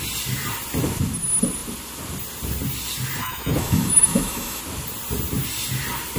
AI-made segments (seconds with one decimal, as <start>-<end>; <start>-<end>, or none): 3.2-4.6